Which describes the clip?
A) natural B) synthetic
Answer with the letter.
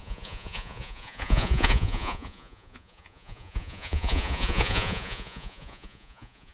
B